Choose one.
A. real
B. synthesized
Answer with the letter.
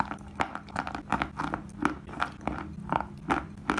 A